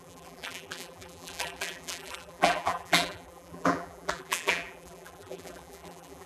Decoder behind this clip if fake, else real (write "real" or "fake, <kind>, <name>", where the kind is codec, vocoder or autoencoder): fake, vocoder, BigVGAN v2